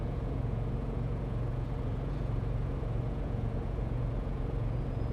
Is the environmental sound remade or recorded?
remade